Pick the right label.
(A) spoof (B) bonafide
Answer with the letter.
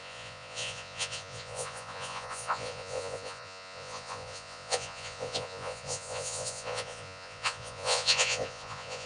A